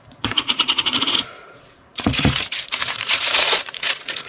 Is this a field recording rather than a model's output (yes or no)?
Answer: no